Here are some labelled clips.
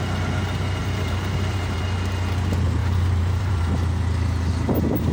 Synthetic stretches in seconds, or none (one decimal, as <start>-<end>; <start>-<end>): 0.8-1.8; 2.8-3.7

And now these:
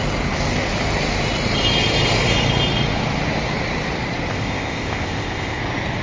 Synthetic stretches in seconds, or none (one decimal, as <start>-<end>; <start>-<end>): 4.3-5.6

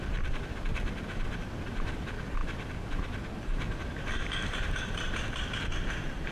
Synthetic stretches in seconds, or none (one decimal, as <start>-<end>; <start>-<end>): none

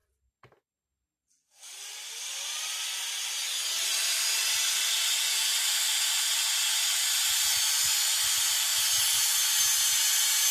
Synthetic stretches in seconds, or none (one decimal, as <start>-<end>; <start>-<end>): none

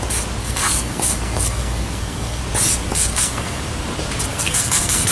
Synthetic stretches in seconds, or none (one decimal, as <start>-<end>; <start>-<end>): 0.4-2.4; 2.9-3.6; 4.3-5.1

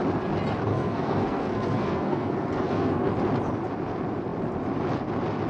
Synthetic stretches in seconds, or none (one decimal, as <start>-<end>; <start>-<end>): 0.7-3.1

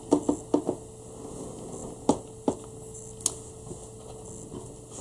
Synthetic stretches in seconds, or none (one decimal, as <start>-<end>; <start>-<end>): none